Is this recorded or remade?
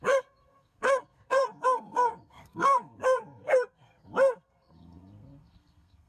remade